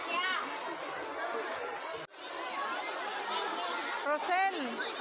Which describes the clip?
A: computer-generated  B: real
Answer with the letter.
B